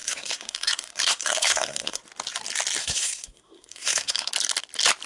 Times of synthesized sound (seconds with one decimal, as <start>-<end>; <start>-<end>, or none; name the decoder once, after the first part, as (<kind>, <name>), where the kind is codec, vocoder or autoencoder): 0.0-2.0 (codec, SNAC); 2.8-4.3